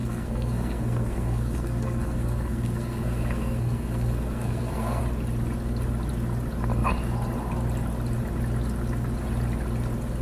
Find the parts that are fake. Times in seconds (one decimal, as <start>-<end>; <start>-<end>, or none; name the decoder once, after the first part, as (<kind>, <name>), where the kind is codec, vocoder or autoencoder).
0.0-5.0 (codec, SNAC)